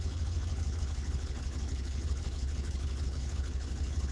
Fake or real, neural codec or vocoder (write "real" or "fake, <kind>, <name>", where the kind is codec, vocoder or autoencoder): fake, codec, HILCodec